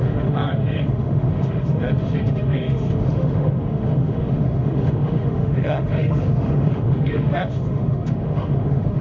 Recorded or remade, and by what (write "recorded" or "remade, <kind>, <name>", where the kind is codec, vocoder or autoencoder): remade, autoencoder, DAC-VAE